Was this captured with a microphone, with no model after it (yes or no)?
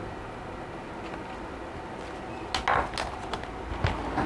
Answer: yes